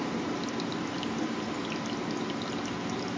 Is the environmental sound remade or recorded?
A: recorded